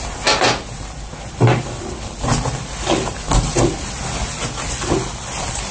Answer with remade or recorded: recorded